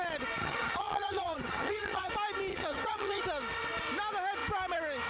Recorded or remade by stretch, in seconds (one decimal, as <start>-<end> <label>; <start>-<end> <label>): 0.0-0.4 recorded; 0.4-2.1 remade; 2.1-2.5 recorded; 2.5-3.2 remade; 3.2-5.1 recorded